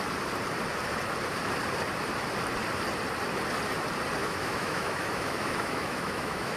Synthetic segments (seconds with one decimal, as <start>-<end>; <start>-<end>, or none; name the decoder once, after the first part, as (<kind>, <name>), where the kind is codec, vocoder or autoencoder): 4.2-6.6 (autoencoder, DAC-VAE)

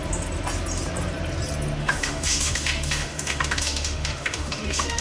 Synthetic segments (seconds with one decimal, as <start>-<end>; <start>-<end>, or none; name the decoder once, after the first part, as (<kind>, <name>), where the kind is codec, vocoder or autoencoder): 1.8-5.0 (autoencoder, DAC-VAE)

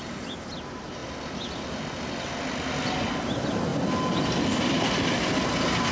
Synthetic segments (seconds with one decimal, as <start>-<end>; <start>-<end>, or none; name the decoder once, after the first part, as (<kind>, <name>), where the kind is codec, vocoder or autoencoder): none

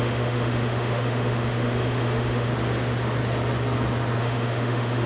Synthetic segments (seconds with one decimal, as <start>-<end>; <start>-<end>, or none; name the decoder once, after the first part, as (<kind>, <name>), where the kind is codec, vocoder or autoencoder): 0.0-2.5 (autoencoder, DAC-VAE); 4.2-5.1

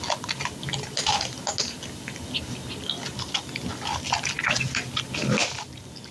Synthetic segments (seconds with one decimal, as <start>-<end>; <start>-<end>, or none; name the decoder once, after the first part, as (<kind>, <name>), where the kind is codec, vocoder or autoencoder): none

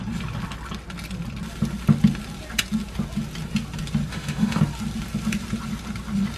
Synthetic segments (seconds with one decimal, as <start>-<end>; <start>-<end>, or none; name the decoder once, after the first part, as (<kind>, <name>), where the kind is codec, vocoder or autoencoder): 4.1-4.6 (autoencoder, DAC-VAE)

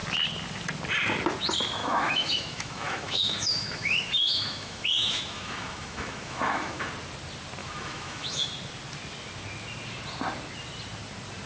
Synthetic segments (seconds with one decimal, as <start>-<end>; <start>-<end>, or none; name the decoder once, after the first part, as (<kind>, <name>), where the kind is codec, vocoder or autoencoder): 1.8-6.9 (autoencoder, DAC-VAE); 7.6-8.5